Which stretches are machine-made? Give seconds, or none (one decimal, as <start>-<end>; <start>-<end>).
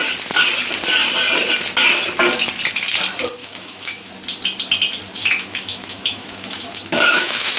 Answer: 3.4-4.1; 5.2-7.6